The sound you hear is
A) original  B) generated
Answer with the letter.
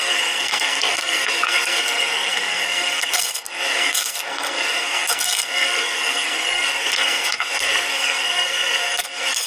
B